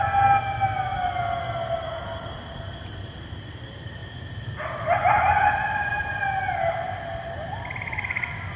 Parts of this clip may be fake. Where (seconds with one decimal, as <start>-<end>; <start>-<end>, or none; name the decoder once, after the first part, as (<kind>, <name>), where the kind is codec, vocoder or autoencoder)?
none